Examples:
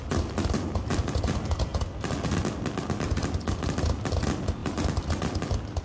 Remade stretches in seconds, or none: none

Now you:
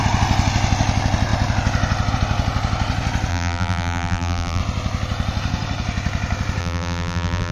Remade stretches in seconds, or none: 3.3-4.6 (vocoder, BigVGAN v2); 6.6-7.5

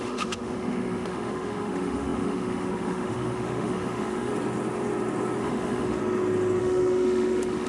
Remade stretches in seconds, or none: 0.0-4.3 (autoencoder, DAC-VAE); 5.4-6.0; 6.6-7.7

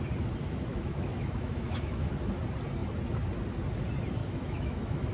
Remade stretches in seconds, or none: 0.7-2.1 (autoencoder, DAC-VAE); 4.2-5.1

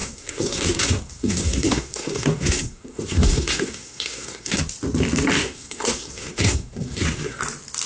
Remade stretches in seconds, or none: 0.0-4.6 (codec, SNAC); 5.4-7.4

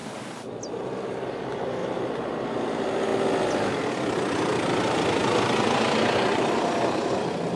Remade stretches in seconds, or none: 0.7-3.1 (vocoder, BigVGAN v2); 4.6-7.6

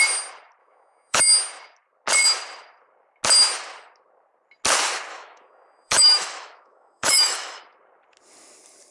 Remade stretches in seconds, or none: 0.6-1.2 (autoencoder, DAC-VAE); 5.1-7.6